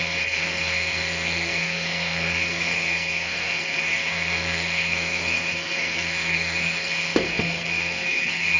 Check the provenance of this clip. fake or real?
fake